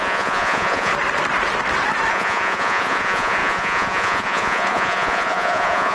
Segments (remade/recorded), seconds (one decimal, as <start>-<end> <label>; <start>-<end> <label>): 0.0-0.9 remade; 0.9-2.1 recorded; 2.1-5.9 remade